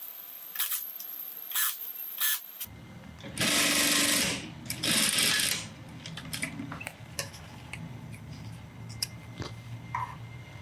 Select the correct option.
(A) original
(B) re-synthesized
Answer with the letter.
A